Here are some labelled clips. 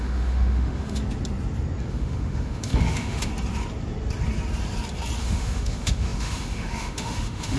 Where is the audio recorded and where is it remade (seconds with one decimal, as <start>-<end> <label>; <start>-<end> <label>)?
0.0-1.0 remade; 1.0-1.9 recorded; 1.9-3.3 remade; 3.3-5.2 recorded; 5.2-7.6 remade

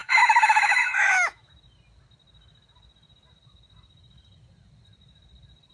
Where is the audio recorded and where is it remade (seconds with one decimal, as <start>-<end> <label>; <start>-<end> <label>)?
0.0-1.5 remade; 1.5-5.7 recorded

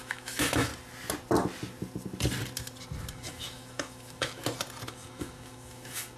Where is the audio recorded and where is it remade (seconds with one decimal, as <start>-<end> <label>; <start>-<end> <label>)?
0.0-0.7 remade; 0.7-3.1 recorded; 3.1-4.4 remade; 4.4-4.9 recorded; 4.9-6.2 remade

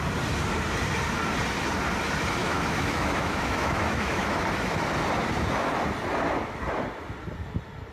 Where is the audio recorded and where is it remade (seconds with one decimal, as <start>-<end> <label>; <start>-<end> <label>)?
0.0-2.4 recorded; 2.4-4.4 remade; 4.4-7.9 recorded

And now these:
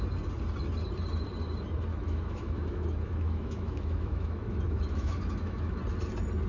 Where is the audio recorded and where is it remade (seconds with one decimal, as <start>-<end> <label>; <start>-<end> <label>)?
0.0-1.9 recorded; 1.9-5.8 remade; 5.8-6.5 recorded

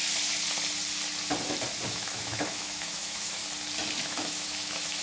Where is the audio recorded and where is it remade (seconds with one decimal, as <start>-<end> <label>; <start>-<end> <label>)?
0.0-1.9 recorded; 1.9-3.4 remade; 3.4-4.0 recorded; 4.0-5.0 remade

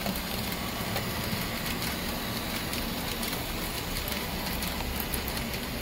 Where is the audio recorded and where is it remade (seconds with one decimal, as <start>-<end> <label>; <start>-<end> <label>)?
0.0-5.8 recorded

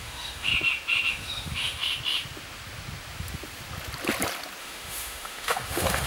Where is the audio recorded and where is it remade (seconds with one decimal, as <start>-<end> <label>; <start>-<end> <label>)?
0.0-0.5 remade; 0.5-1.1 recorded; 1.1-1.8 remade; 1.8-4.6 recorded; 4.6-6.1 remade